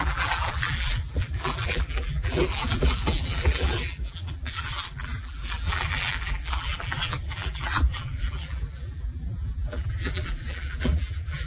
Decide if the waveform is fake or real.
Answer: fake